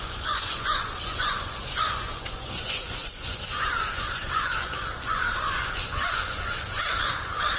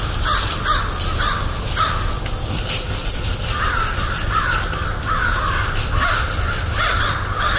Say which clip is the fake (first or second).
first